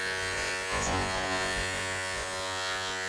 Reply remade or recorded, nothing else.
remade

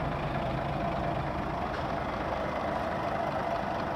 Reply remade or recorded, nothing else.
recorded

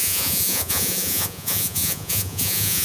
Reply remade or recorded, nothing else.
remade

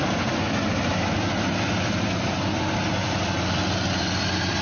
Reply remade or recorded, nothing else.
recorded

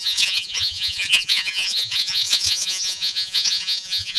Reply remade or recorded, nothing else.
remade